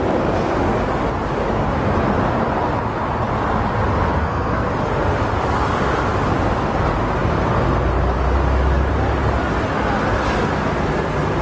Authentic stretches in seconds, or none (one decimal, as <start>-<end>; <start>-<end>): 0.0-4.1; 4.7-11.4